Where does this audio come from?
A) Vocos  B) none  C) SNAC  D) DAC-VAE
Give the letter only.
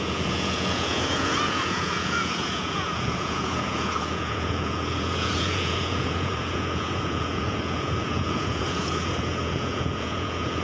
A